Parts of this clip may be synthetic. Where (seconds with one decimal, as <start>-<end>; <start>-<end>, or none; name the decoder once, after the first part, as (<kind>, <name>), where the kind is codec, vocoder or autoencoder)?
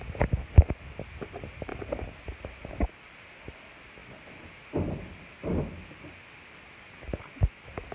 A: none